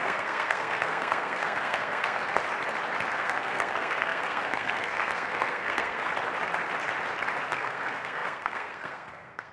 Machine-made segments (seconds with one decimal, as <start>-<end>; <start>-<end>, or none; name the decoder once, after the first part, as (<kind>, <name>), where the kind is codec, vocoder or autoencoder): 0.0-2.4 (codec, SNAC); 3.1-6.1; 7.5-9.5